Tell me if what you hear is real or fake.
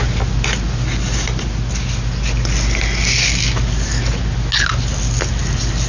real